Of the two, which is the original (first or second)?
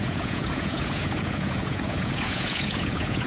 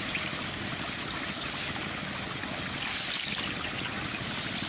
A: second